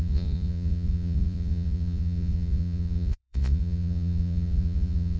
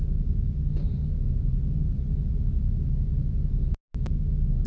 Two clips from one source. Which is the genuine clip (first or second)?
second